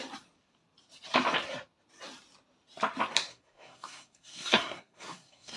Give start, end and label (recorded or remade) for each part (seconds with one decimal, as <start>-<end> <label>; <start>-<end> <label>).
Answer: 0.0-3.3 recorded; 3.3-5.6 remade